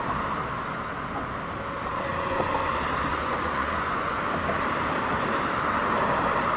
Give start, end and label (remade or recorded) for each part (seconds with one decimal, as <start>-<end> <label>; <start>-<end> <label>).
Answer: 0.0-2.1 recorded; 2.1-2.7 remade; 2.7-3.1 recorded; 3.1-4.2 remade; 4.2-6.6 recorded